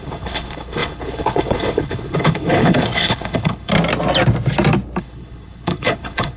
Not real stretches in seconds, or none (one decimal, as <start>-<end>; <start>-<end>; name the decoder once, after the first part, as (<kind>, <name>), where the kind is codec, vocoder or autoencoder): 0.0-3.7 (codec, HILCodec); 5.0-6.4